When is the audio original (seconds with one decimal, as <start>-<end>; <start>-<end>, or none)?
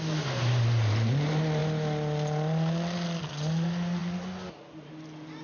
0.0-5.4